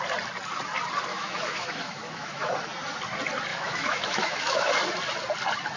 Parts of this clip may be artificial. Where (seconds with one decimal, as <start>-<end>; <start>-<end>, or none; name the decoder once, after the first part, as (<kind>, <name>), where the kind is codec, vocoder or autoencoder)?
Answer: 1.1-2.5 (autoencoder, DAC-VAE); 3.5-4.7